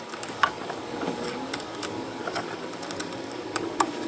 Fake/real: fake